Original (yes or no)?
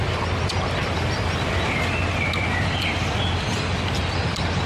yes